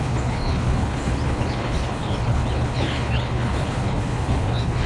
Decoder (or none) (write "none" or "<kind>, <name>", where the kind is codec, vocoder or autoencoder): codec, HILCodec